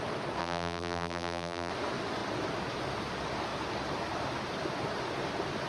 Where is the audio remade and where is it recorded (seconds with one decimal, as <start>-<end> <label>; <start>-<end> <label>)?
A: 0.0-0.4 recorded; 0.4-1.7 remade; 1.7-5.7 recorded